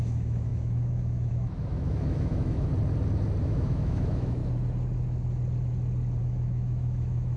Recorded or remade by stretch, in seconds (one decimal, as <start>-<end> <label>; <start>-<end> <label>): 0.0-2.7 remade; 2.7-3.4 recorded; 3.4-4.4 remade; 4.4-6.2 recorded; 6.2-7.4 remade